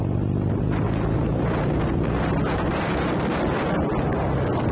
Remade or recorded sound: recorded